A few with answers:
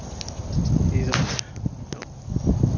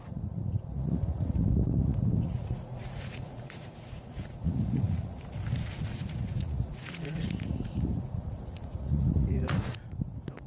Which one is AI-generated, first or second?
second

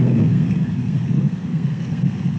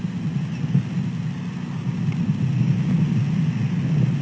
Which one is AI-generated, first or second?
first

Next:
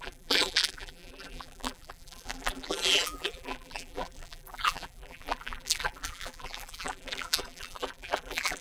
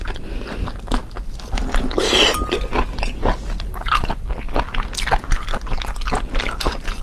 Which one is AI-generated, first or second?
first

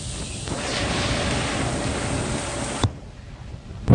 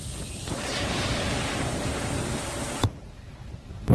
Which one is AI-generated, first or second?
second